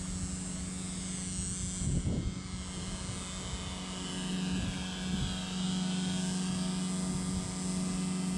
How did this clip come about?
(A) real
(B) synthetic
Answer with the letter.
A